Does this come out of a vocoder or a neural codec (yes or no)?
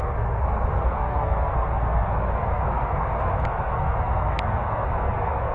yes